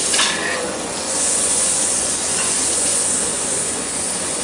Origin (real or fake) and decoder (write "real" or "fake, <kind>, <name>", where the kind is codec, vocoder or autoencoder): fake, vocoder, Vocos